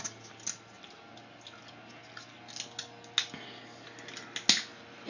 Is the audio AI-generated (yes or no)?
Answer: no